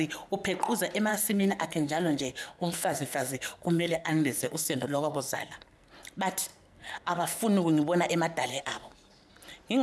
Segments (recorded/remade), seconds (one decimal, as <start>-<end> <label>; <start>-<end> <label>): 0.0-1.1 recorded; 1.1-5.9 remade; 5.9-6.5 recorded; 6.5-7.4 remade; 7.4-8.5 recorded; 8.5-9.3 remade; 9.3-9.8 recorded